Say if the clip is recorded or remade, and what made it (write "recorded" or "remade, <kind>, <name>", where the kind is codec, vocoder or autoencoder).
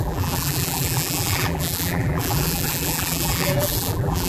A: remade, vocoder, BigVGAN v2